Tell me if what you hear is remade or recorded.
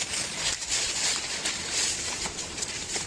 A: recorded